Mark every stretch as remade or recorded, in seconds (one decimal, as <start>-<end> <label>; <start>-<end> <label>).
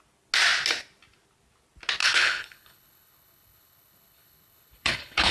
0.0-2.0 recorded; 2.0-5.3 remade